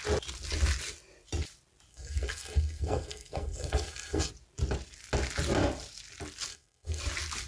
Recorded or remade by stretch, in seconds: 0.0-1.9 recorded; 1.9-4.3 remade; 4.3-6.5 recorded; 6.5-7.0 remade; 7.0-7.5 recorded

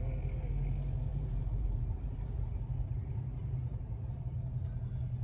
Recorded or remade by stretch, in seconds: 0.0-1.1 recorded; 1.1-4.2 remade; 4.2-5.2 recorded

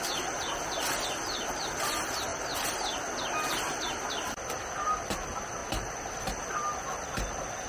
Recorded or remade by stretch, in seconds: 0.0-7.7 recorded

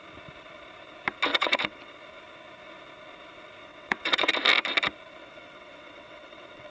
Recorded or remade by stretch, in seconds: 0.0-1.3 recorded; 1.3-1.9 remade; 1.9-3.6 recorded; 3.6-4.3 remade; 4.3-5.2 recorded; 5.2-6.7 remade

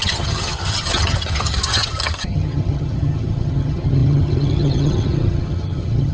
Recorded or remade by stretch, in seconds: 0.0-6.1 remade

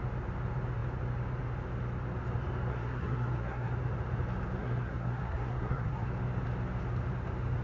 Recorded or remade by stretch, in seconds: 0.0-2.7 recorded; 2.7-3.7 remade; 3.7-4.6 recorded; 4.6-6.1 remade; 6.1-7.6 recorded

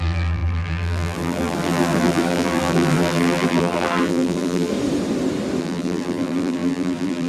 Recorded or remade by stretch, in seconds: 0.0-4.7 remade; 4.7-5.6 recorded; 5.6-7.3 remade